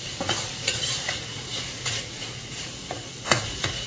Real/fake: fake